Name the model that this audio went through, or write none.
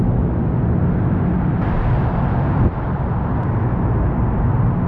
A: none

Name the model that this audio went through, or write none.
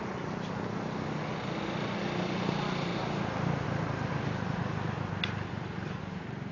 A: none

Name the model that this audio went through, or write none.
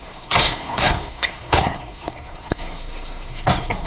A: codec, SNAC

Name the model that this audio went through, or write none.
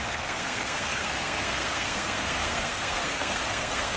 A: codec, SNAC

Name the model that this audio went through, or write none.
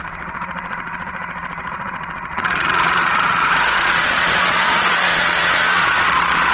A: vocoder, Vocos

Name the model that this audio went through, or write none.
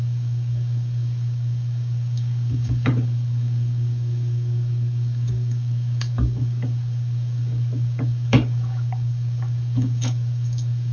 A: codec, DAC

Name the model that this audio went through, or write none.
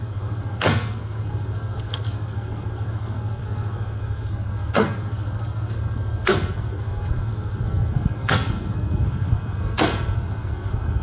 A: codec, SNAC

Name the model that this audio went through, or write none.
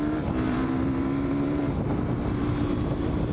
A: vocoder, BigVGAN v2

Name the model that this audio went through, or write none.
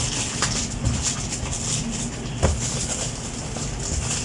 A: none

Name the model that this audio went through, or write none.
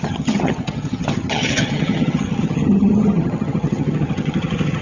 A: vocoder, HiFi-GAN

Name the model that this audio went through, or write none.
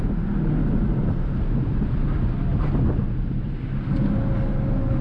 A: none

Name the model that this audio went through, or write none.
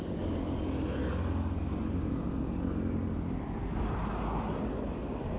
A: none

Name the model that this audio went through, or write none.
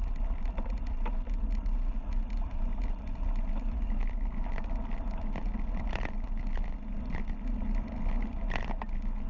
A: vocoder, BigVGAN v2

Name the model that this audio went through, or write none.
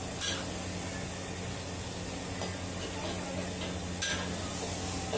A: none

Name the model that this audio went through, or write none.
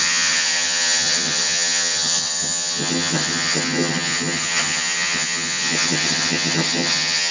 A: vocoder, HiFi-GAN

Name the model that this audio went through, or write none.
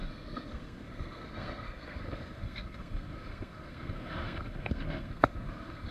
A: codec, SNAC